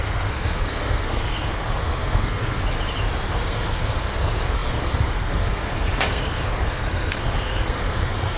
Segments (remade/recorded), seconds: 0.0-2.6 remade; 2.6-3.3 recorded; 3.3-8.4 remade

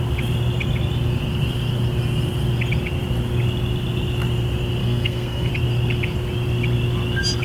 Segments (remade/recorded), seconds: 0.0-4.8 recorded; 4.8-5.5 remade; 5.5-7.4 recorded

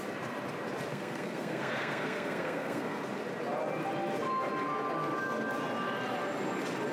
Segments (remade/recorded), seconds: 0.0-0.9 recorded; 0.9-3.0 remade; 3.0-6.9 recorded